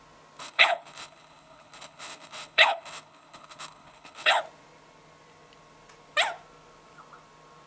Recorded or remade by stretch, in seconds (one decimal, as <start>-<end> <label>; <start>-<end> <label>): 0.0-0.4 recorded; 0.4-4.4 remade; 4.4-7.7 recorded